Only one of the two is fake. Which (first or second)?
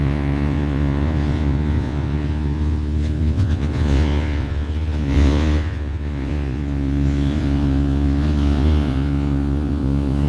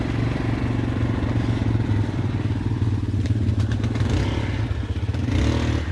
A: first